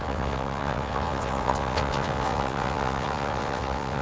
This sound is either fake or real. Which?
fake